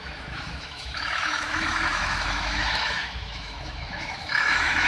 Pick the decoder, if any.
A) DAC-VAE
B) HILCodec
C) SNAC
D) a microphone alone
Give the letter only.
A